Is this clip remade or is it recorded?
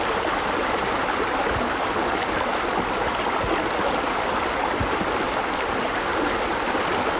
recorded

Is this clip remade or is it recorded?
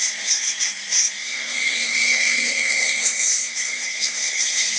remade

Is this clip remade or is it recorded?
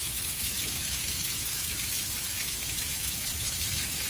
remade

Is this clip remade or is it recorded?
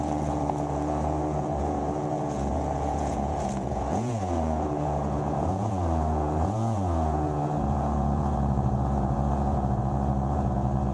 remade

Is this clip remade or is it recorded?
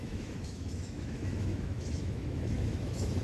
remade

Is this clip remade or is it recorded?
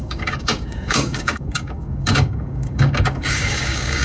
remade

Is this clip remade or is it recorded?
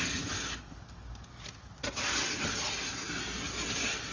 recorded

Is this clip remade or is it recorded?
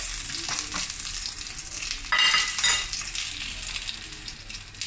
recorded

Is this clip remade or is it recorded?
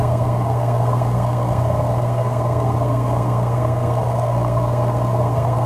remade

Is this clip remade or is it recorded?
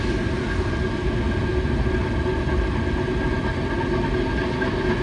recorded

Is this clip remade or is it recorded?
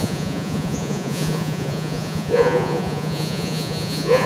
remade